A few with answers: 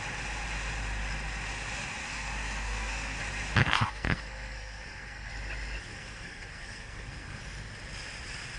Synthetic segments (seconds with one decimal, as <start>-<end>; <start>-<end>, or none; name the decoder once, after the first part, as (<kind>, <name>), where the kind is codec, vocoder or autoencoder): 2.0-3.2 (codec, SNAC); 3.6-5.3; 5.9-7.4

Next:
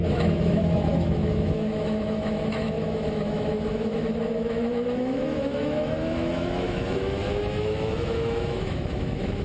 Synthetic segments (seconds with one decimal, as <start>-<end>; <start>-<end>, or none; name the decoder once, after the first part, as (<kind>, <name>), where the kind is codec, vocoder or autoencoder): 0.0-9.4 (autoencoder, DAC-VAE)

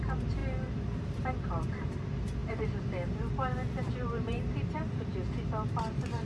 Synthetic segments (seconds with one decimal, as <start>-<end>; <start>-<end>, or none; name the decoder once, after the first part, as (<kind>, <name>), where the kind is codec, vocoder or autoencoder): 0.0-5.1 (vocoder, BigVGAN v2); 5.8-6.3

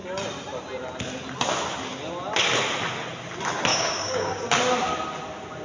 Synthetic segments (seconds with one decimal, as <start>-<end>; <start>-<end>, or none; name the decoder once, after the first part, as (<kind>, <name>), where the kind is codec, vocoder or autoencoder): 3.7-4.4 (codec, DAC)

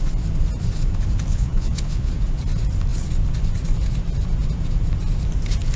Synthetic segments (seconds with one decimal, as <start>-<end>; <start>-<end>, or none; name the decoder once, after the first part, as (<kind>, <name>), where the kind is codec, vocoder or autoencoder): 1.3-2.1 (vocoder, Vocos)

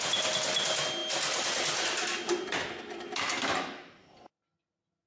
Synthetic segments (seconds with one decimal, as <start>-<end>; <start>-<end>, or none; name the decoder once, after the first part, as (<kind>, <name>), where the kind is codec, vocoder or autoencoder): none